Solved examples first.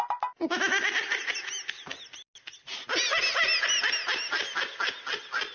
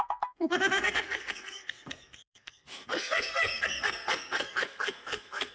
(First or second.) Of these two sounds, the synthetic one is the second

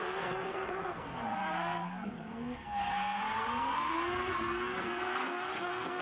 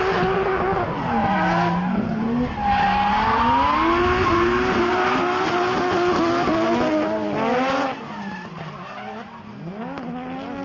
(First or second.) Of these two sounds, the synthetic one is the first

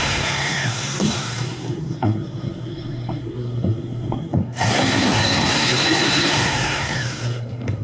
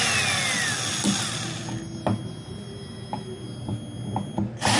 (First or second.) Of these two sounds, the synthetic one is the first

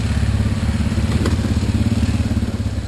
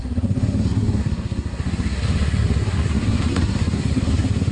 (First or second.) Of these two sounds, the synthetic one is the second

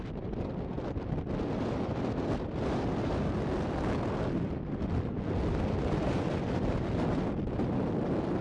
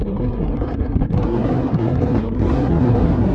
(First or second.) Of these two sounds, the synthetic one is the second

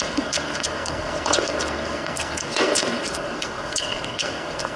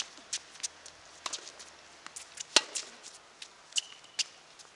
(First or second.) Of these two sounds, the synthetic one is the first